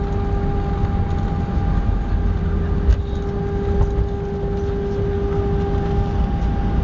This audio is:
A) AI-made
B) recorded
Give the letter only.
B